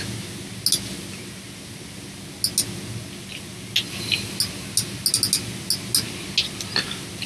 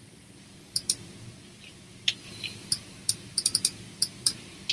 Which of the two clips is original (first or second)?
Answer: first